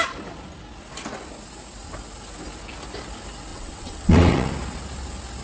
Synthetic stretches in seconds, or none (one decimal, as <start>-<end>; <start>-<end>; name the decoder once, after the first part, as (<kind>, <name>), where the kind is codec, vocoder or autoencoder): 3.5-4.5 (vocoder, WaveNeXt)